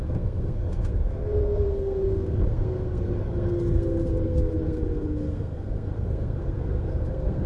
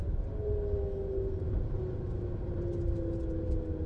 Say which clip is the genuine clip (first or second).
second